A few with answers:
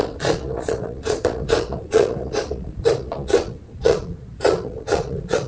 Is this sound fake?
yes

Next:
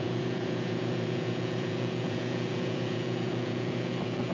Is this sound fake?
yes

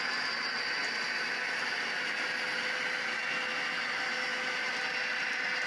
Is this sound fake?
no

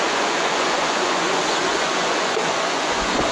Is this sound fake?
yes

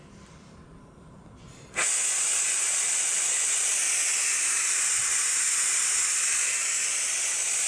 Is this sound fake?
no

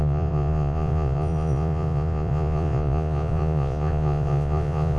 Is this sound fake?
yes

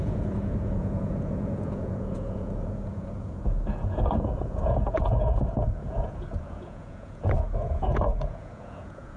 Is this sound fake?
yes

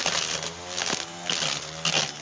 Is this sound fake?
no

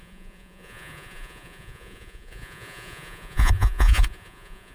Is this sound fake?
yes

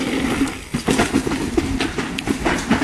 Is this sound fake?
no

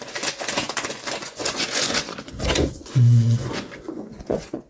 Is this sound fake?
yes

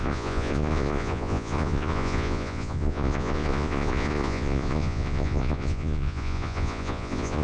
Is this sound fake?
yes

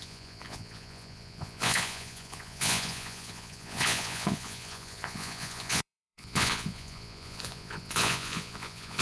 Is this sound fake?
yes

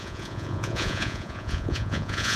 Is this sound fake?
yes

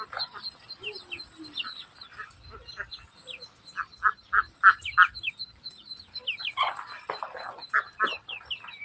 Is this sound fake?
no